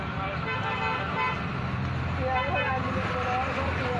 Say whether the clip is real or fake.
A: real